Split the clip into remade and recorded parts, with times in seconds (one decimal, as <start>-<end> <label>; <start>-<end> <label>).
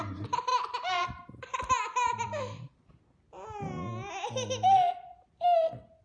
0.0-6.0 recorded